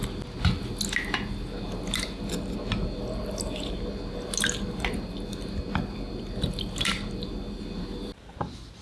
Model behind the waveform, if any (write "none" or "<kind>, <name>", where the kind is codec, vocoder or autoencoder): none